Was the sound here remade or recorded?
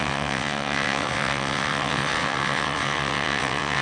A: remade